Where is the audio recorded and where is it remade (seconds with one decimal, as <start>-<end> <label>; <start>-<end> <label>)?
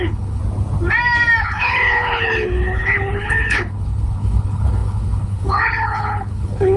0.0-0.4 remade; 0.4-1.4 recorded; 1.4-6.8 remade